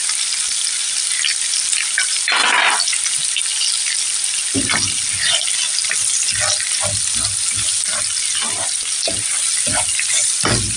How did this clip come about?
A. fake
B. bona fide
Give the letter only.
B